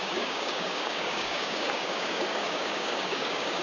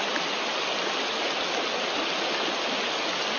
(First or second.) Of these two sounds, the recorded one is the second